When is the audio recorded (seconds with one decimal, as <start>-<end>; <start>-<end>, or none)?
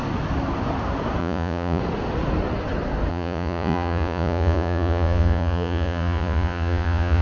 0.0-1.2; 1.8-3.1